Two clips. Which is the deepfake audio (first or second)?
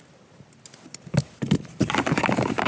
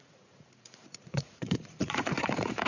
second